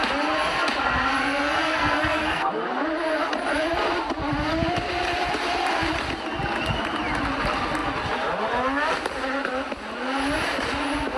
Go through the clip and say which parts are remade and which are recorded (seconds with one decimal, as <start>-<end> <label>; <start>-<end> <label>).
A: 0.0-1.2 recorded; 1.2-2.5 remade; 2.5-11.2 recorded